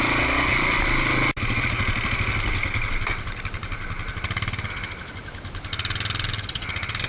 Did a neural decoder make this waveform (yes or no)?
no